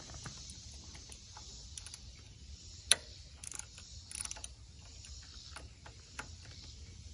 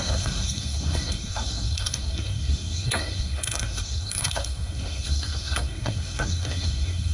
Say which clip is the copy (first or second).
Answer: second